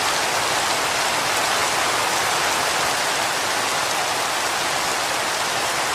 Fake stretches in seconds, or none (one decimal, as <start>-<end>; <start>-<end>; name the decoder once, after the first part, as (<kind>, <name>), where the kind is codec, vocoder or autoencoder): none